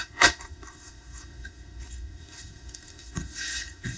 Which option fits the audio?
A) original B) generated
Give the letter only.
B